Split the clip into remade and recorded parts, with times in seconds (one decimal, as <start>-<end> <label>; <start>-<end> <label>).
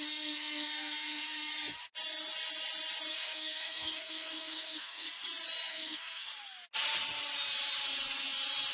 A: 0.0-1.5 remade; 1.5-3.1 recorded; 3.1-5.1 remade; 5.1-5.7 recorded; 5.7-6.3 remade; 6.3-8.7 recorded